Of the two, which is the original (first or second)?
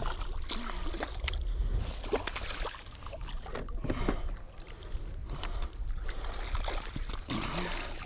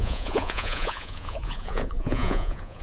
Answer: first